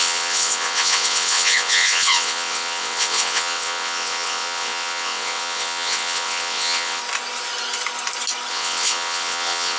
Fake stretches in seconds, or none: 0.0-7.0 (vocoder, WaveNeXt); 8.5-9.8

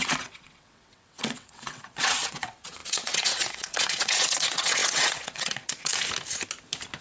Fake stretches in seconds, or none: 0.0-5.9 (vocoder, WaveNeXt)

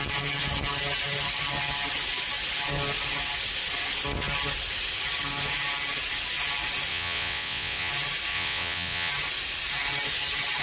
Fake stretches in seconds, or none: 6.9-7.9 (vocoder, WaveNeXt); 8.3-9.1

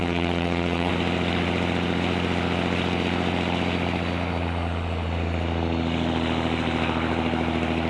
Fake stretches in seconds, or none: 0.0-0.9 (vocoder, WaveNeXt)

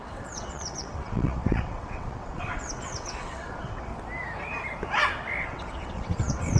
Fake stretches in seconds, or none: 0.0-3.9 (vocoder, WaveNeXt); 5.4-6.6